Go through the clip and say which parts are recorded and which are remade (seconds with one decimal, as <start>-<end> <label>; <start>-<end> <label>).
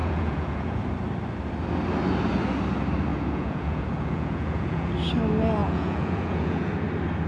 0.0-0.8 remade; 0.8-3.1 recorded; 3.1-4.9 remade; 4.9-5.6 recorded; 5.6-6.7 remade; 6.7-7.3 recorded